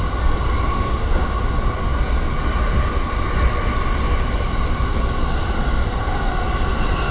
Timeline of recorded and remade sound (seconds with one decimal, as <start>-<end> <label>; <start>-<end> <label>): 0.0-0.7 recorded; 0.7-1.4 remade; 1.4-7.1 recorded